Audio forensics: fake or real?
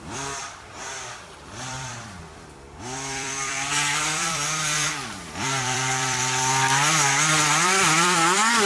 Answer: fake